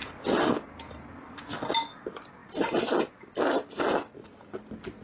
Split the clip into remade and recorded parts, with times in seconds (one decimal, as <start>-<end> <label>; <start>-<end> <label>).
0.0-5.0 recorded